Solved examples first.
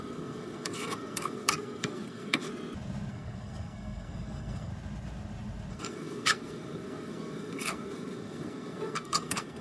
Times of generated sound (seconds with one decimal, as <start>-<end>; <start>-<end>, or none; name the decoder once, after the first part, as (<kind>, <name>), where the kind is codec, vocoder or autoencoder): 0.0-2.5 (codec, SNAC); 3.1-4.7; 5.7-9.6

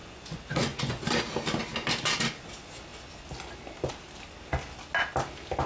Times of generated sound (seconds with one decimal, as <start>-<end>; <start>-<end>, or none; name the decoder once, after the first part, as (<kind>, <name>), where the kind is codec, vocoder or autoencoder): 0.0-1.0 (vocoder, Vocos)

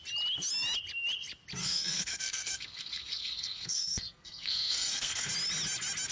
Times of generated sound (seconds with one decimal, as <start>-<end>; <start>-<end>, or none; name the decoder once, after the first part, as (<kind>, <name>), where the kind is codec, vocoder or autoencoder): 1.6-5.3 (codec, SNAC)